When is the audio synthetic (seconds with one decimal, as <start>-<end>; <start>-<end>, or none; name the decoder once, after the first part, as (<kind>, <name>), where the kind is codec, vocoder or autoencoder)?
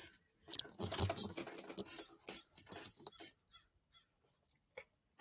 2.4-5.2 (vocoder, BigVGAN v2)